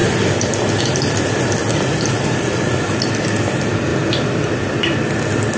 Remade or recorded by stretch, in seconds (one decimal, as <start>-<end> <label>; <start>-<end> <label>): 0.0-0.8 remade; 0.8-1.6 recorded; 1.6-2.6 remade; 2.6-3.9 recorded; 3.9-4.5 remade; 4.5-5.6 recorded